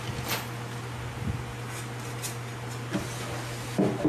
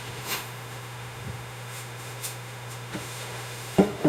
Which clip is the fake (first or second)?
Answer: second